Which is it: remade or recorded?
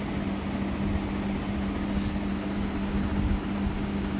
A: recorded